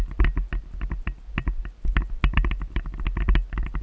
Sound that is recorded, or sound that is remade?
recorded